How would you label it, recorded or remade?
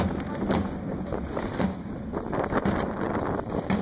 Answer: recorded